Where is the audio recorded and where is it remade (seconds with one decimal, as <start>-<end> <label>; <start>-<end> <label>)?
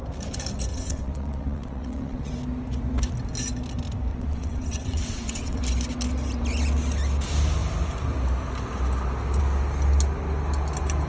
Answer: 0.0-0.7 recorded; 0.7-2.3 remade; 2.3-4.1 recorded; 4.1-5.6 remade; 5.6-11.1 recorded